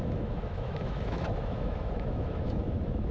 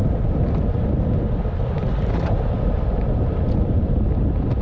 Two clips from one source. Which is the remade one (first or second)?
first